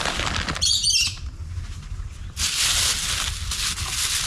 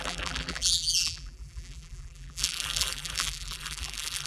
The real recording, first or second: first